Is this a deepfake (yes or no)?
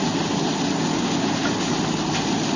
no